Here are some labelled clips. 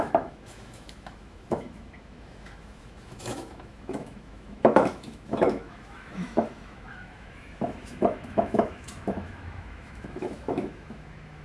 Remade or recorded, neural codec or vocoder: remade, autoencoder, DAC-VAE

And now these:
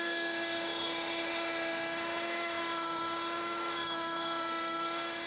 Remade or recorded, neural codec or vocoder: remade, autoencoder, DAC-VAE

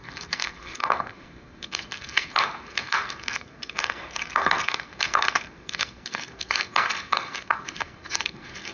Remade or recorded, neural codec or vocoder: remade, codec, SNAC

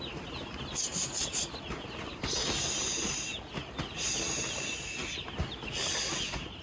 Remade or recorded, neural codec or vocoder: recorded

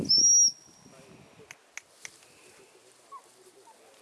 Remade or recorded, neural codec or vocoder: recorded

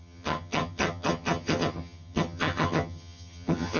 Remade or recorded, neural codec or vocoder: remade, vocoder, HiFi-GAN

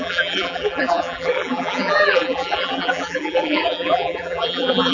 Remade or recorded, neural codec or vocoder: remade, vocoder, BigVGAN v2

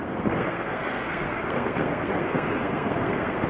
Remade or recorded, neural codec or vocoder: remade, codec, SNAC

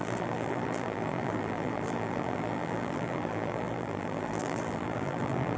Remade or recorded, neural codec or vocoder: remade, vocoder, BigVGAN v2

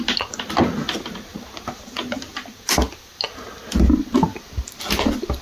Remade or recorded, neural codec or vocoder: recorded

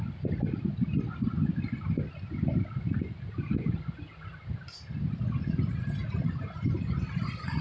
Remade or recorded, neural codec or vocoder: recorded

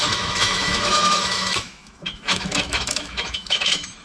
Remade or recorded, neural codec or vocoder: remade, autoencoder, DAC-VAE